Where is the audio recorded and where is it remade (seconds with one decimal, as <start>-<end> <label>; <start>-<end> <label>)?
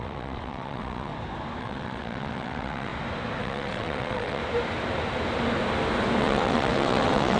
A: 0.0-1.1 remade; 1.1-1.6 recorded; 1.6-2.9 remade; 2.9-3.4 recorded; 3.4-4.4 remade; 4.4-6.2 recorded; 6.2-7.4 remade